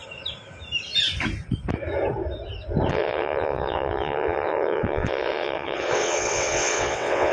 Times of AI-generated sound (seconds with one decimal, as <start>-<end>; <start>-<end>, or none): 2.9-7.3